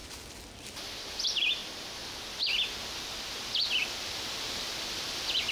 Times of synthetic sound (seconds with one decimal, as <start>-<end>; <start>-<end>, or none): 0.8-1.6; 4.5-5.5

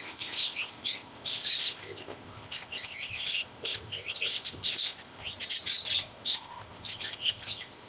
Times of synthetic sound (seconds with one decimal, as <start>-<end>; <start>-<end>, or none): 0.0-5.3; 6.0-7.9

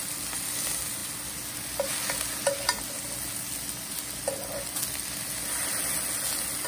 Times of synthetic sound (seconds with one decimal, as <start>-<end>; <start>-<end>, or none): none